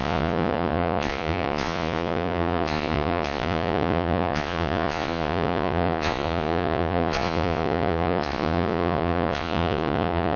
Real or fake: fake